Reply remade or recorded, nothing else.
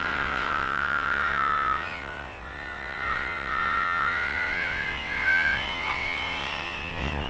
remade